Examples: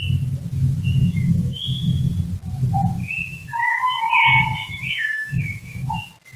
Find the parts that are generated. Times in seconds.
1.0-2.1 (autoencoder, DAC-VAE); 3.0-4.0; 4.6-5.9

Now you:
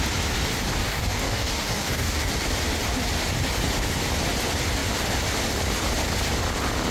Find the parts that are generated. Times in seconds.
0.8-2.3 (codec, DAC)